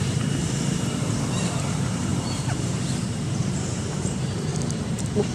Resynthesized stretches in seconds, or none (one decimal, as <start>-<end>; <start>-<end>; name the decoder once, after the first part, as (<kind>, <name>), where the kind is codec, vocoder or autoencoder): 0.0-5.3 (vocoder, BigVGAN v2)